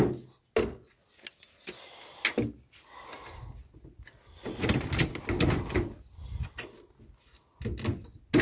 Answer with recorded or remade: recorded